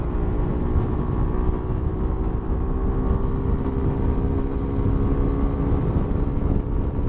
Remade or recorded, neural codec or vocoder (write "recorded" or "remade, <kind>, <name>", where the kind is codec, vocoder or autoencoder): recorded